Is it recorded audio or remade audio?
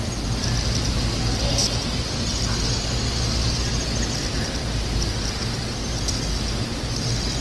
recorded